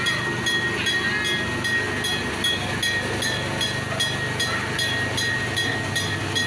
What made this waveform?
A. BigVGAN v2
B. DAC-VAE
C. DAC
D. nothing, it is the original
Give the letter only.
D